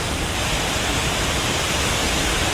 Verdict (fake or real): real